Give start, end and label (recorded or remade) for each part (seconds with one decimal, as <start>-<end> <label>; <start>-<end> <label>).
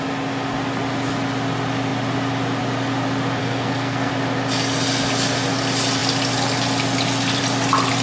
0.0-3.4 recorded; 3.4-4.1 remade; 4.1-8.0 recorded